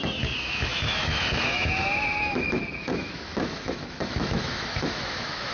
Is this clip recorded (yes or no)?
no